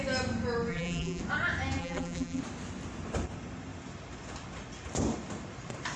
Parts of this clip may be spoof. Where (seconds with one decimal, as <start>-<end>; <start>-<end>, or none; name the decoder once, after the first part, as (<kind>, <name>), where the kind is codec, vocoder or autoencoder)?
0.7-1.2 (vocoder, BigVGAN v2); 1.8-2.4